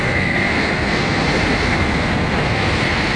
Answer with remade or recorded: remade